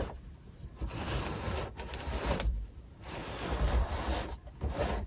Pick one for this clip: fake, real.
fake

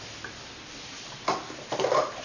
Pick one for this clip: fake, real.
real